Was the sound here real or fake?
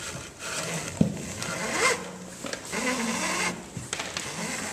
real